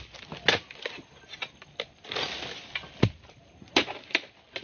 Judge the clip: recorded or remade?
recorded